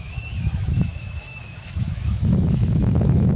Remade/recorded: remade